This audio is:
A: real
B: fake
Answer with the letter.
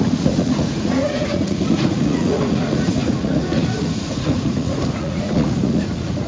B